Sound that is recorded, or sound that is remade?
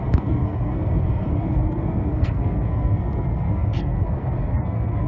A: remade